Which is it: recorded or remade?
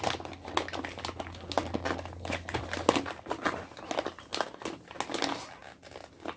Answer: recorded